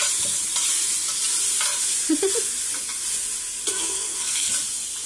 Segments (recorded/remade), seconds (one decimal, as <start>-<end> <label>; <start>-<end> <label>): 0.0-3.7 recorded; 3.7-4.5 remade; 4.5-5.1 recorded